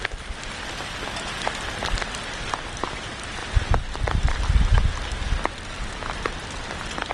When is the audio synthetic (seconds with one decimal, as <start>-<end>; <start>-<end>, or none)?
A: 3.4-5.0